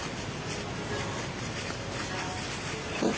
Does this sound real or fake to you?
real